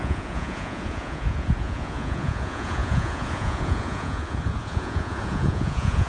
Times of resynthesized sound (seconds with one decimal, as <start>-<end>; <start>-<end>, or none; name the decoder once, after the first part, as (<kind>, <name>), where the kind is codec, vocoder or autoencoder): 0.0-6.1 (vocoder, Vocos)

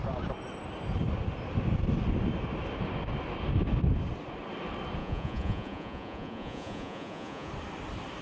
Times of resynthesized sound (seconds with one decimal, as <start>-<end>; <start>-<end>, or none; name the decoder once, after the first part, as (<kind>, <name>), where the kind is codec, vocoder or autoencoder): 5.0-7.5 (vocoder, Vocos)

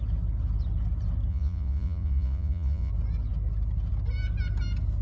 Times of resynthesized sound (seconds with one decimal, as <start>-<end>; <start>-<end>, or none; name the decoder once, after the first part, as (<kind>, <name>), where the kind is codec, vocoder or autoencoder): 1.3-2.9 (vocoder, Vocos)

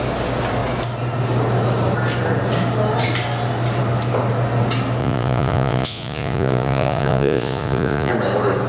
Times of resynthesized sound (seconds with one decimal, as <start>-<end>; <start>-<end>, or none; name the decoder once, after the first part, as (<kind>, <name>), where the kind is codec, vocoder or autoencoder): 5.0-8.1 (vocoder, Vocos)